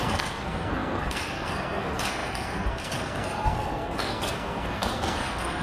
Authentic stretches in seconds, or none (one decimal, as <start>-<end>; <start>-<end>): none